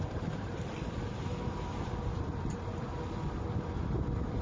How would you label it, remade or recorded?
remade